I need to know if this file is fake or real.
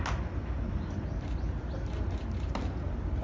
real